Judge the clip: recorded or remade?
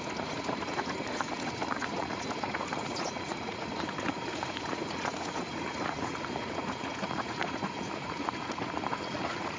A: remade